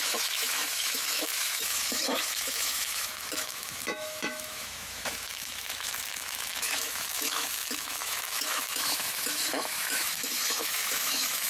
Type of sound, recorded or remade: remade